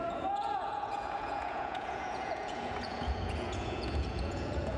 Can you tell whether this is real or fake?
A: fake